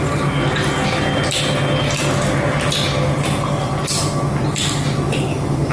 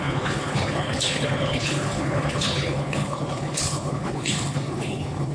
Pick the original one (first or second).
first